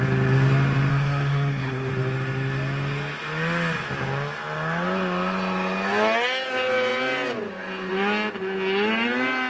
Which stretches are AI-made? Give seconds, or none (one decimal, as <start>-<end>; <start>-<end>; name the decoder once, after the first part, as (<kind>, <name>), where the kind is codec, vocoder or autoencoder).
0.9-1.9 (codec, SNAC)